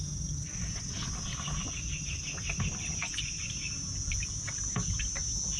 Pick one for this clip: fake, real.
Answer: real